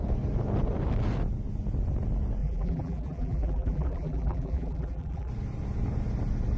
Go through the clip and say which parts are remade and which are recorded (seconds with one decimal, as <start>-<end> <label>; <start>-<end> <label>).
0.0-2.4 recorded; 2.4-5.3 remade; 5.3-6.6 recorded